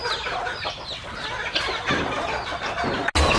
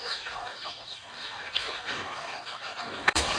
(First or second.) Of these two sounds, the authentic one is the first